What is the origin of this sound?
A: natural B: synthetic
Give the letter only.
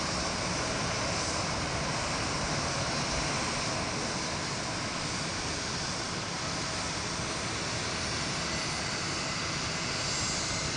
A